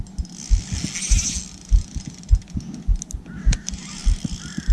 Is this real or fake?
real